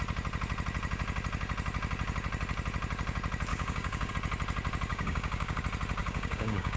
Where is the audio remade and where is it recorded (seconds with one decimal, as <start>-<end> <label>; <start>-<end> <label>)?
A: 0.0-3.5 recorded; 3.5-4.1 remade; 4.1-4.9 recorded; 4.9-5.6 remade; 5.6-6.0 recorded; 6.0-6.8 remade